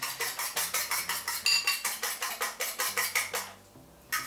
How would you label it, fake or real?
real